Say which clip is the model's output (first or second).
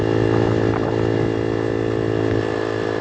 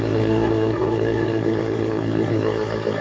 second